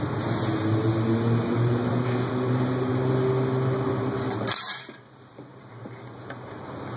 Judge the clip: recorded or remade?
recorded